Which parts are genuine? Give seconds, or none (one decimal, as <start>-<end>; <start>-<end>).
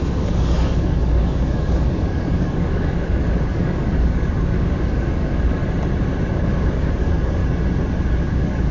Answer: 5.6-6.3; 7.4-8.1